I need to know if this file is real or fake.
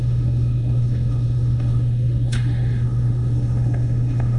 fake